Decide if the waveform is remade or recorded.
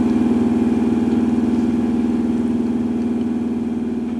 recorded